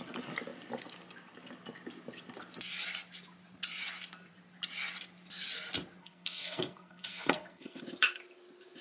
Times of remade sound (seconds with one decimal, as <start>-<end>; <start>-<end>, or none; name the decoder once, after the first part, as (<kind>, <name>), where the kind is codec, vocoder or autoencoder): 6.0-7.8 (codec, SNAC)